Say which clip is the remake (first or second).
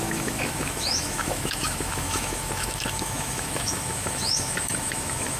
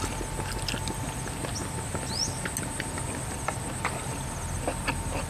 first